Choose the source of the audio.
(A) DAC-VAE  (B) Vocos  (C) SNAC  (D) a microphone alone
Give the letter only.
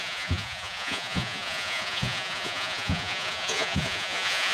B